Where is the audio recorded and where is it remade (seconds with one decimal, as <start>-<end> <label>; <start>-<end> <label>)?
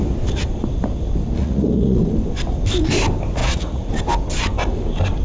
0.0-1.4 recorded; 1.4-2.0 remade; 2.0-3.4 recorded; 3.4-3.9 remade; 3.9-5.2 recorded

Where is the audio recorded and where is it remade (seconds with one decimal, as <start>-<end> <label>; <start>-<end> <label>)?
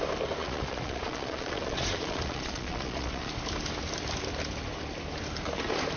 0.0-0.4 recorded; 0.4-3.3 remade; 3.3-6.0 recorded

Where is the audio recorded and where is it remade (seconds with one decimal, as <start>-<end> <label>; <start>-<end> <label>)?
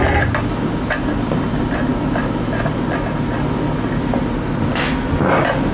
0.0-5.7 recorded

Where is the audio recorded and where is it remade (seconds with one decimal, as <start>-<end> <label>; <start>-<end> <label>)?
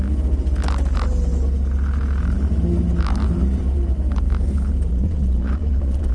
0.0-4.9 recorded; 4.9-6.1 remade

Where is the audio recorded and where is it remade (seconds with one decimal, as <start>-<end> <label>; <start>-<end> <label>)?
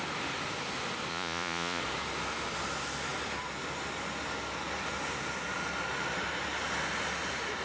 0.0-1.1 recorded; 1.1-1.8 remade; 1.8-7.6 recorded